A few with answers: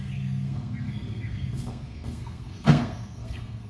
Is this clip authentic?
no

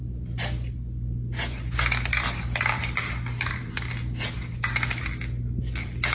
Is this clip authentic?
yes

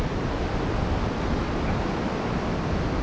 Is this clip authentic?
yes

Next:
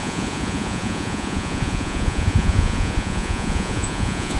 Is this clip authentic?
no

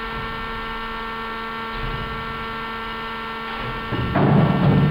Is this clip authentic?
yes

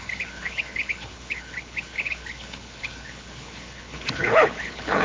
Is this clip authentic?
no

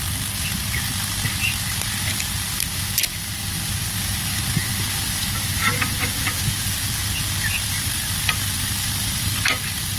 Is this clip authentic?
yes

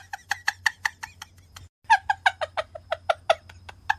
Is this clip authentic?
yes